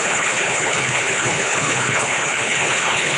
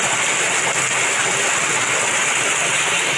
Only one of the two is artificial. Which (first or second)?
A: first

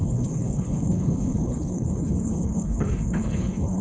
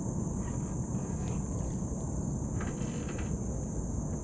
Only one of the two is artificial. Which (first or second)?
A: first